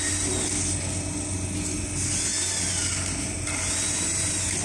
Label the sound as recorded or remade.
recorded